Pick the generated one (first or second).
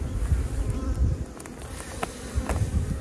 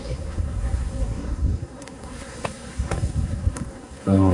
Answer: second